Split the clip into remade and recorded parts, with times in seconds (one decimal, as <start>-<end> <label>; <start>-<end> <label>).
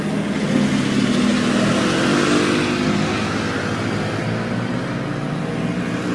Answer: 0.0-6.1 recorded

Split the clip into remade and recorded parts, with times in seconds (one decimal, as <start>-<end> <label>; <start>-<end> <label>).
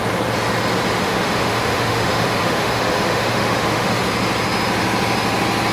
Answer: 0.0-1.0 recorded; 1.0-4.0 remade; 4.0-5.7 recorded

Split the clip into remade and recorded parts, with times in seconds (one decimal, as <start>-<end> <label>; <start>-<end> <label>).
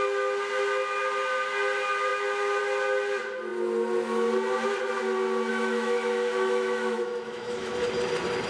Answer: 0.0-5.5 recorded; 5.5-7.7 remade; 7.7-8.5 recorded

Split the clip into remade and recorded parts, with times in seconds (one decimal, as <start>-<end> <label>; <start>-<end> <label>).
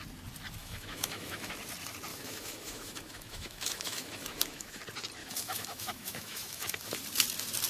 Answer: 0.0-0.6 recorded; 0.6-1.5 remade; 1.5-2.1 recorded; 2.1-4.8 remade; 4.8-5.2 recorded; 5.2-7.0 remade; 7.0-7.7 recorded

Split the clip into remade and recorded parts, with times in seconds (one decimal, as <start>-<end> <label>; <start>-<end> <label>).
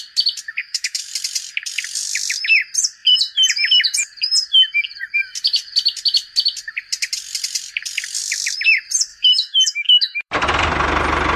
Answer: 0.0-0.6 recorded; 0.6-1.1 remade; 1.1-9.1 recorded; 9.1-10.3 remade; 10.3-11.4 recorded